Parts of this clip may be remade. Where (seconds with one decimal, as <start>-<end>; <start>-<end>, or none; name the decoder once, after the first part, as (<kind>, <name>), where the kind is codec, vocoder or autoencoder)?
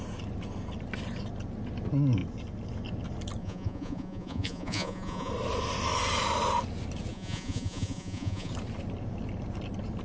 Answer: 3.4-5.3 (vocoder, Vocos); 7.1-8.5